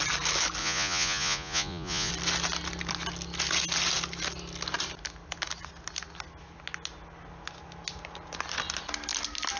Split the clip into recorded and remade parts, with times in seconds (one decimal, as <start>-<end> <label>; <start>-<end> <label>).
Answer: 0.0-0.6 recorded; 0.6-2.1 remade; 2.1-9.6 recorded

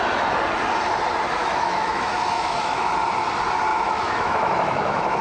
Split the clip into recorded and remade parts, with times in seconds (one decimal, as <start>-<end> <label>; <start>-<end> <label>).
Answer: 0.0-1.4 recorded; 1.4-2.9 remade; 2.9-3.7 recorded; 3.7-5.2 remade